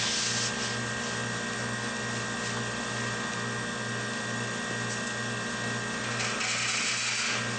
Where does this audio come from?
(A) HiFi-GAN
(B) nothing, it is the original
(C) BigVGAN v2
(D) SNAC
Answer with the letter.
B